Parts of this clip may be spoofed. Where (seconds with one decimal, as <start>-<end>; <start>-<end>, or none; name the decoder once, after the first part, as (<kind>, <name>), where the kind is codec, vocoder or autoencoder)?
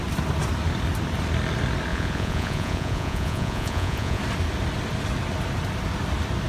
1.9-4.2 (vocoder, Vocos)